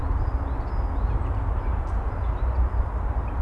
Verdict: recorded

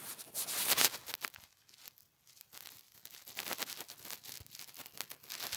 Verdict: recorded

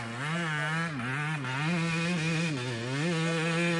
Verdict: recorded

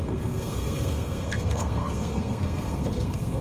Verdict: remade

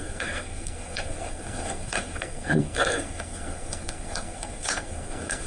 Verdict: remade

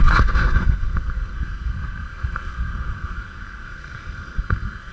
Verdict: remade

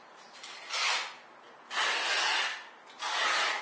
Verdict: recorded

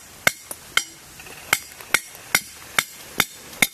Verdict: recorded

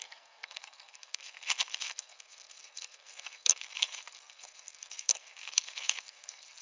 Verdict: remade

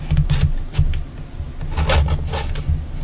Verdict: recorded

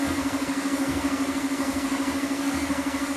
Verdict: remade